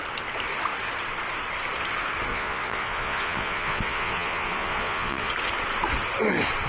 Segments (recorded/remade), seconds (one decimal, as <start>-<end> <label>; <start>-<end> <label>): 0.0-2.3 recorded; 2.3-5.3 remade; 5.3-6.7 recorded